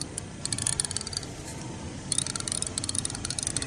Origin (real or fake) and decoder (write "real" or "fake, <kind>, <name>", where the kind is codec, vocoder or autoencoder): real